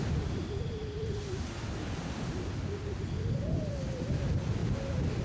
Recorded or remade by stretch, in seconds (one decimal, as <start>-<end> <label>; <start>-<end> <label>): 0.0-5.2 recorded